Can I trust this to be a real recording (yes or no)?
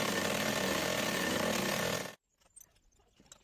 yes